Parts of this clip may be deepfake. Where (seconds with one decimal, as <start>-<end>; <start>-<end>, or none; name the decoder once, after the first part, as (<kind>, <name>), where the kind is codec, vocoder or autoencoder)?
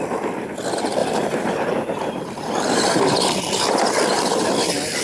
1.0-3.4 (vocoder, BigVGAN v2)